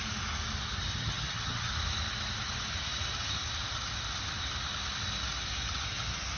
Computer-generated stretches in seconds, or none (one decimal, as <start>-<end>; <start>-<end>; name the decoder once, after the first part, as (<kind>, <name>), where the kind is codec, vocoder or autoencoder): 0.9-1.7 (vocoder, HiFi-GAN)